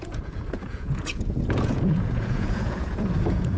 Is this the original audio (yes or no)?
no